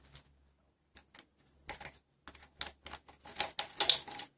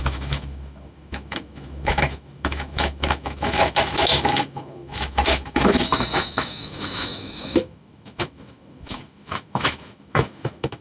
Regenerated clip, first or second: second